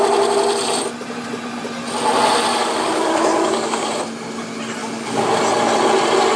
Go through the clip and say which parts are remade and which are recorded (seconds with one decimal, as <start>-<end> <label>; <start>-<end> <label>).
0.0-2.6 recorded; 2.6-3.9 remade; 3.9-4.8 recorded; 4.8-5.4 remade; 5.4-6.4 recorded